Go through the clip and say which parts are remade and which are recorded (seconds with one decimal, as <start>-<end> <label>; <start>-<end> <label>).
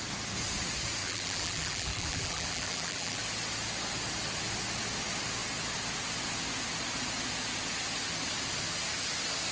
0.0-1.0 recorded; 1.0-3.2 remade; 3.2-9.5 recorded